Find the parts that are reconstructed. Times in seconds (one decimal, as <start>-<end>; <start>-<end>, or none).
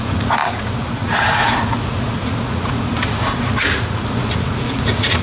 0.0-5.2